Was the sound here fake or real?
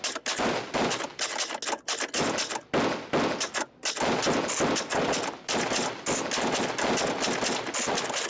real